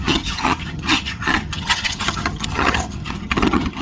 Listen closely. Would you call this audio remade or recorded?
remade